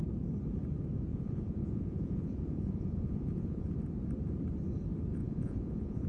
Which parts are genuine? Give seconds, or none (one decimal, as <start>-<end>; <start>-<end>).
0.0-1.1; 3.7-5.2